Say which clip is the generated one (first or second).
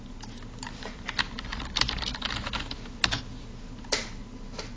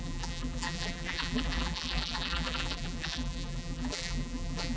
second